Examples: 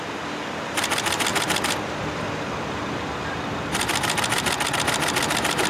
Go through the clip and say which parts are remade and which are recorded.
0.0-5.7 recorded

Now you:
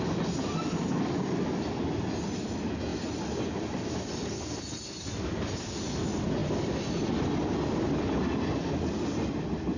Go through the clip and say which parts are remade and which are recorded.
0.0-9.8 recorded

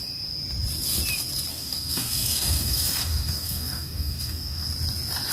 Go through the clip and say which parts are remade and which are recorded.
0.0-1.5 recorded; 1.5-4.7 remade; 4.7-5.3 recorded

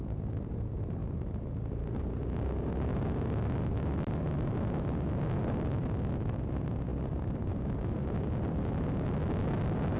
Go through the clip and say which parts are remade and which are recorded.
0.0-10.0 recorded